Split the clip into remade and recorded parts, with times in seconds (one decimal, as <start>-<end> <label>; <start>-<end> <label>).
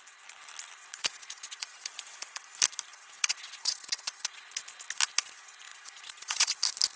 0.0-0.9 recorded; 0.9-2.5 remade; 2.5-2.9 recorded; 2.9-4.6 remade; 4.6-5.7 recorded; 5.7-6.5 remade; 6.5-7.0 recorded